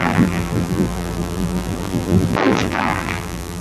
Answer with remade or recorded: remade